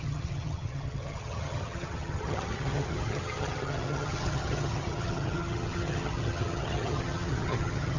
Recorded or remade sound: remade